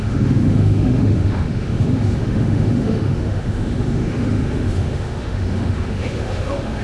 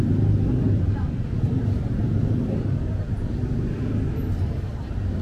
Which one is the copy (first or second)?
first